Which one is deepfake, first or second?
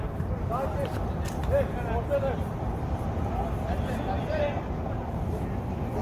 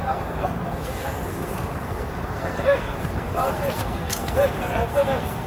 second